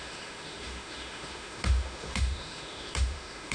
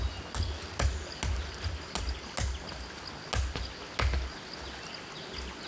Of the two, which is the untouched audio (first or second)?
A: second